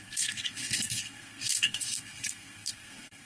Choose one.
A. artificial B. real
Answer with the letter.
A